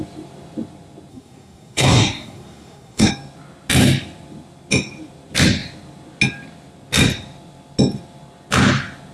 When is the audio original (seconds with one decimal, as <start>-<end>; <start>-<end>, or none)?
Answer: 0.0-1.1; 3.1-9.1